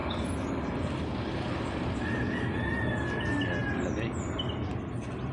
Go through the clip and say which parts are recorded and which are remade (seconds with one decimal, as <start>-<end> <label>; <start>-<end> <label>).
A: 0.0-5.3 recorded

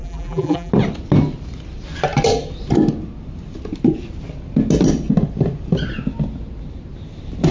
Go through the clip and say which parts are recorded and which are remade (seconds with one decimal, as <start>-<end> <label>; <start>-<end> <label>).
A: 0.0-0.7 remade; 0.7-7.5 recorded

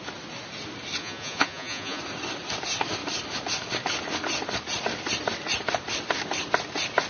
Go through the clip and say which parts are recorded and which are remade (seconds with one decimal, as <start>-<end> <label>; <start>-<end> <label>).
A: 0.0-1.0 recorded; 1.0-2.0 remade; 2.0-7.1 recorded